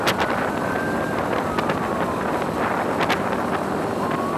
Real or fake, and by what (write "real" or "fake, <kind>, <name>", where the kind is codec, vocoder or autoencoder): real